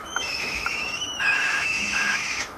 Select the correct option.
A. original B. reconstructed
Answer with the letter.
B